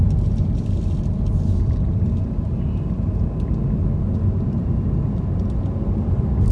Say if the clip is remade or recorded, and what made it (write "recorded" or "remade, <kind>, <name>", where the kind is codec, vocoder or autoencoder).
recorded